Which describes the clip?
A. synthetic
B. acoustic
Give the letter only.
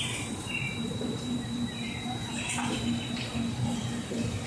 A